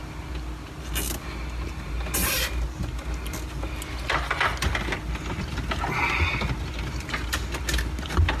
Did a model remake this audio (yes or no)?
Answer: no